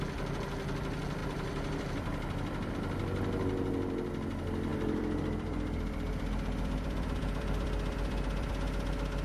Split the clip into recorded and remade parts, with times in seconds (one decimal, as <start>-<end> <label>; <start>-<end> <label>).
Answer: 0.0-1.2 recorded; 1.2-2.7 remade; 2.7-4.7 recorded; 4.7-8.5 remade; 8.5-9.2 recorded